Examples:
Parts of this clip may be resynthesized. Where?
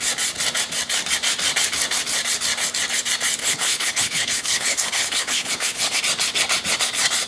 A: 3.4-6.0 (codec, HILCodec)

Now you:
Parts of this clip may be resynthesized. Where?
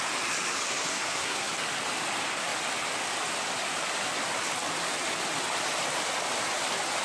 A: 0.9-1.5 (codec, SNAC)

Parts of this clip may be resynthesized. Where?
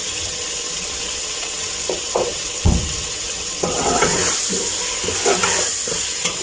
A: 0.0-4.2 (vocoder, WaveNeXt); 5.9-6.4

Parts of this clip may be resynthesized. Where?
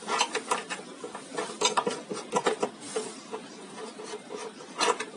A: 0.9-3.5 (vocoder, BigVGAN v2)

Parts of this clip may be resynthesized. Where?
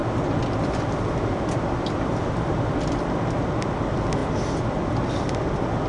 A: none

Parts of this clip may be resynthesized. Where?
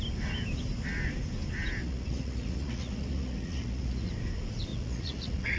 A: 1.8-4.1 (vocoder, Vocos); 4.7-5.6